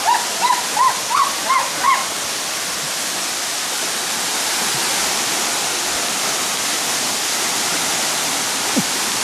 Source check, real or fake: real